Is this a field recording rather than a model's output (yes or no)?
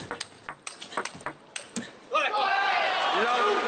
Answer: yes